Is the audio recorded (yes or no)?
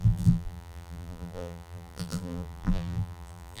no